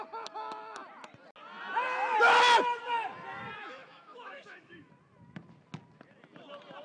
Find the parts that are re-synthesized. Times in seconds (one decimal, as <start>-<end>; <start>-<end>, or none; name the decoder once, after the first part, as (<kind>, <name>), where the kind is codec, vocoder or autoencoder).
3.6-4.9 (autoencoder, DAC-VAE)